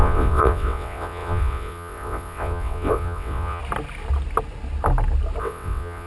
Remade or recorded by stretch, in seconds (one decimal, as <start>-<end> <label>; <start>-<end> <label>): 0.0-3.6 remade; 3.6-5.4 recorded; 5.4-6.1 remade